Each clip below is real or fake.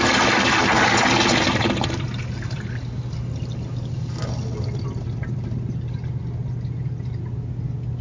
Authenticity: real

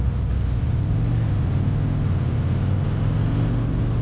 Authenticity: real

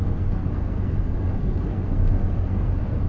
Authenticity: fake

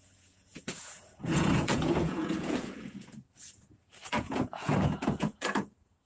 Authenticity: fake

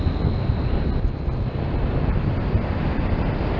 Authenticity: real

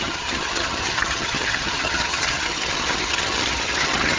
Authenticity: fake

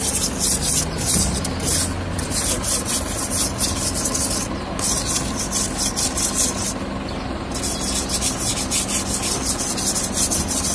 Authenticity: real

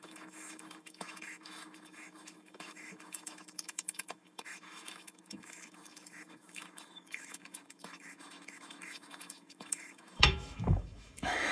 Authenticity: fake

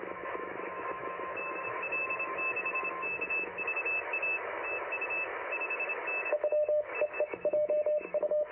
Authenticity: fake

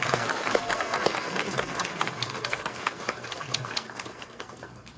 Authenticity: fake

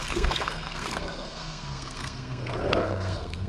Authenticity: fake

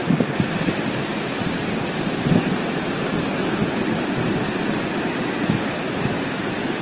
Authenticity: real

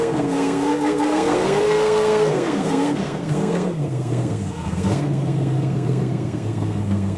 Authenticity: fake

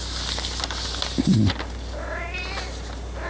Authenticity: real